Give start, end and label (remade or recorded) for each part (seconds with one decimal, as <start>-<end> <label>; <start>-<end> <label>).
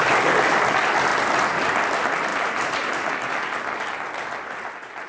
0.0-2.3 recorded; 2.3-3.1 remade; 3.1-5.1 recorded